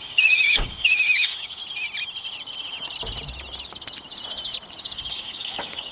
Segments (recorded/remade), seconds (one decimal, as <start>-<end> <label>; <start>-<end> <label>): 0.0-1.6 remade; 1.6-5.1 recorded; 5.1-5.9 remade